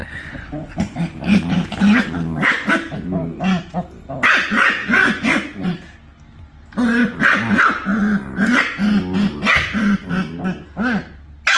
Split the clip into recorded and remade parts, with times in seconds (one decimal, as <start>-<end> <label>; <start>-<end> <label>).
0.0-2.7 remade; 2.7-4.8 recorded; 4.8-5.7 remade; 5.7-11.6 recorded